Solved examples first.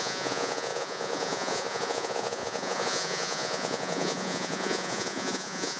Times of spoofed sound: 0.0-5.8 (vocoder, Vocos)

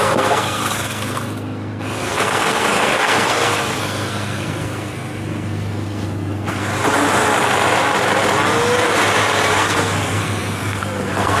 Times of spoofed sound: 0.0-6.7 (codec, SNAC); 9.5-11.4

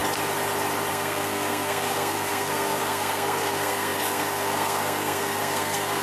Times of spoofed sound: 0.9-6.0 (codec, SNAC)

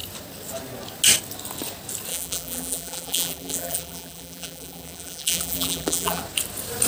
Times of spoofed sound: 2.1-6.2 (vocoder, BigVGAN v2)

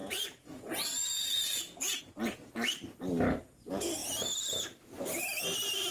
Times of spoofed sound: 0.0-2.0 (vocoder, Vocos)